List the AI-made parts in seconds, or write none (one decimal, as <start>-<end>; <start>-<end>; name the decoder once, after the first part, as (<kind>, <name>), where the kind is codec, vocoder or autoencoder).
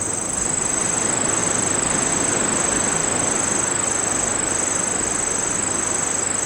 none